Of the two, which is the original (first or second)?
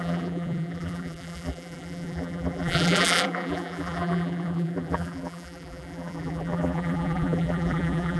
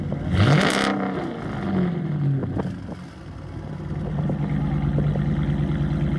second